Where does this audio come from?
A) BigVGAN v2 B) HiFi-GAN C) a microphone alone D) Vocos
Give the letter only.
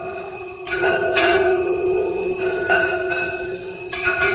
B